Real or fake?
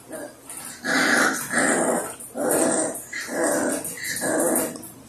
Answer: real